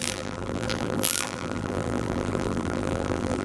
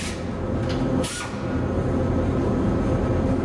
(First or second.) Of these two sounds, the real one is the second